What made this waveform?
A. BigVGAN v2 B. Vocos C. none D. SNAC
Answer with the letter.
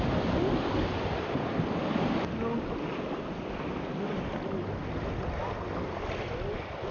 C